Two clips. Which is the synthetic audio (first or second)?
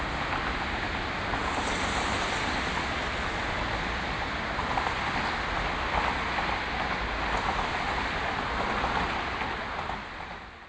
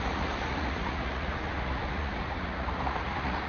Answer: second